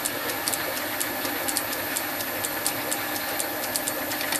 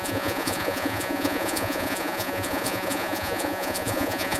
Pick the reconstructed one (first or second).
second